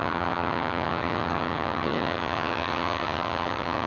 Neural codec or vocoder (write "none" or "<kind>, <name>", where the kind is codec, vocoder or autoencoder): vocoder, HiFi-GAN